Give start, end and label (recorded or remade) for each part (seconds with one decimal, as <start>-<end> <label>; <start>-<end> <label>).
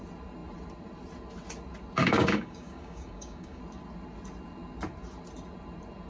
0.0-2.0 recorded; 2.0-3.6 remade; 3.6-6.1 recorded